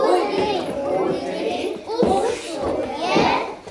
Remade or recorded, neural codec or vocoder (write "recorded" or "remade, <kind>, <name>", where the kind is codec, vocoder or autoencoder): recorded